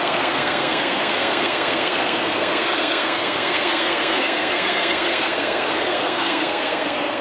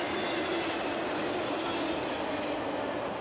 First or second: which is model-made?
first